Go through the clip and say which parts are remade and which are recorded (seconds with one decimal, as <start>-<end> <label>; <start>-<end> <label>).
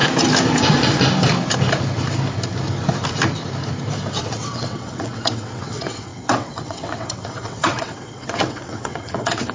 0.0-4.2 recorded; 4.2-9.5 remade